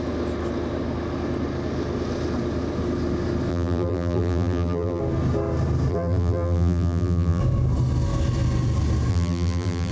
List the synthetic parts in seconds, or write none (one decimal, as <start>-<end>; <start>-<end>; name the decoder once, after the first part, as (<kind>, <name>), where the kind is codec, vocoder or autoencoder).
3.5-5.0 (vocoder, BigVGAN v2); 5.9-7.4; 9.1-9.9